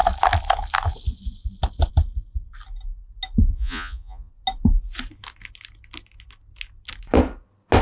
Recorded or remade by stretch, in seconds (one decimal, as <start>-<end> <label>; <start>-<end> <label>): 0.0-3.5 recorded; 3.5-4.3 remade; 4.3-7.8 recorded